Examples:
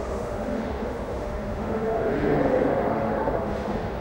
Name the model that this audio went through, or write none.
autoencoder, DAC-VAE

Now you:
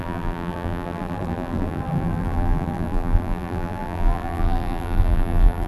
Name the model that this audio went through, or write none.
vocoder, BigVGAN v2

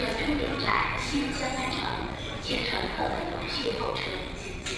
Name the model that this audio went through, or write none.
vocoder, WaveNeXt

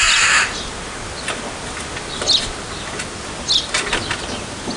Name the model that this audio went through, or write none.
none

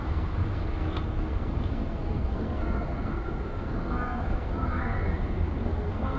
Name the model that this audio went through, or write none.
codec, SNAC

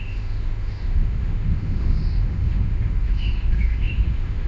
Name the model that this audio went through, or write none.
autoencoder, DAC-VAE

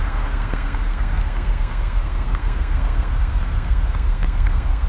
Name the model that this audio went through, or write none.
codec, SNAC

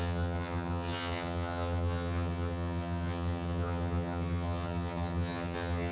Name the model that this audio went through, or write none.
vocoder, HiFi-GAN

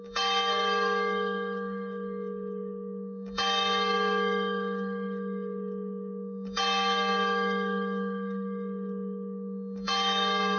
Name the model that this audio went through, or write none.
codec, DAC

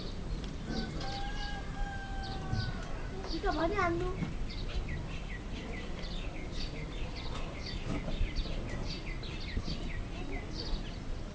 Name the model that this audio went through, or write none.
none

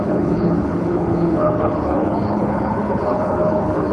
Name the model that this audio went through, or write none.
codec, HILCodec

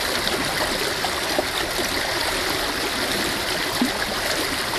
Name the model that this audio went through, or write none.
vocoder, BigVGAN v2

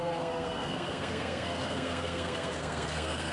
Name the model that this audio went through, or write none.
codec, SNAC